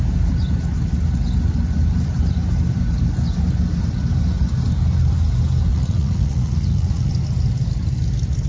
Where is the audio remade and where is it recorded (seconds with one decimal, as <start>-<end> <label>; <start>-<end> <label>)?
0.0-5.7 recorded; 5.7-7.1 remade; 7.1-8.5 recorded